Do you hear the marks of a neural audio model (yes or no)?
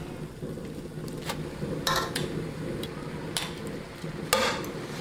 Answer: no